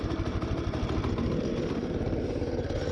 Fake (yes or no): no